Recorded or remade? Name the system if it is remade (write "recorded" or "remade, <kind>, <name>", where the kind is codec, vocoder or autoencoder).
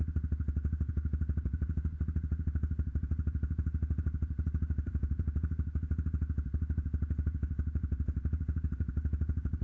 remade, vocoder, BigVGAN v2